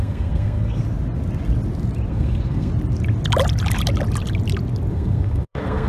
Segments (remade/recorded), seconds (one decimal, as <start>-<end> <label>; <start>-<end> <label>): 0.0-0.8 remade; 0.8-2.1 recorded; 2.1-2.7 remade; 2.7-4.9 recorded; 4.9-5.9 remade

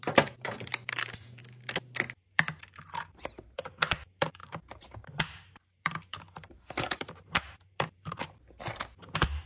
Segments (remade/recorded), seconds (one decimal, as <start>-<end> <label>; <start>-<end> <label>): 0.0-1.4 remade; 1.4-2.3 recorded; 2.3-9.5 remade

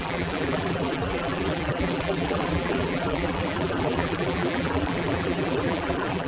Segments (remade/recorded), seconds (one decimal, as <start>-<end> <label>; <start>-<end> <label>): 0.0-6.3 remade

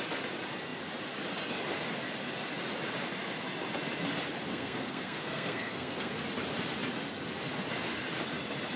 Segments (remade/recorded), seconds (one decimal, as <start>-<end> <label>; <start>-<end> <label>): 0.0-4.5 recorded; 4.5-6.1 remade; 6.1-8.8 recorded

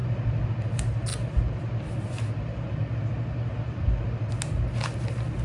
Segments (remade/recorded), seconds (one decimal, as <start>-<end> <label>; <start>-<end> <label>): 0.0-5.4 recorded

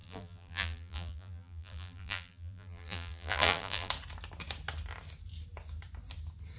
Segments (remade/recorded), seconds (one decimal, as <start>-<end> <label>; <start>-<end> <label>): 0.0-3.9 remade; 3.9-6.6 recorded